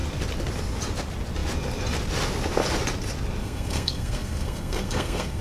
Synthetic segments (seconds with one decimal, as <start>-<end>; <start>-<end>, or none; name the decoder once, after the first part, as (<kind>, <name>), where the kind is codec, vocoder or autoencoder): 3.4-5.4 (codec, SNAC)